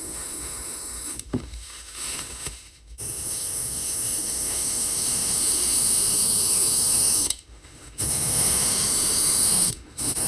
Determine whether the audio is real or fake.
fake